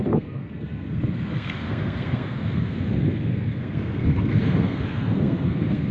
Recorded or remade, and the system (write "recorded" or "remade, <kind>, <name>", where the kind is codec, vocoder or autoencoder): remade, codec, SNAC